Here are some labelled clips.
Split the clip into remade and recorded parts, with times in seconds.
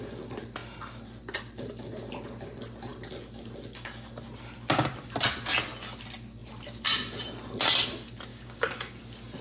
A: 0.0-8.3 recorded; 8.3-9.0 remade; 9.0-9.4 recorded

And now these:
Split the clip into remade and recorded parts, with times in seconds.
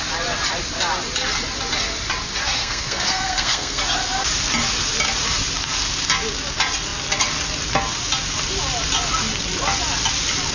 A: 0.0-2.6 recorded; 2.6-3.8 remade; 3.8-10.5 recorded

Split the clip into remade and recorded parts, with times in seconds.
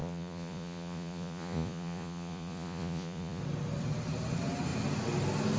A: 0.0-3.4 remade; 3.4-5.6 recorded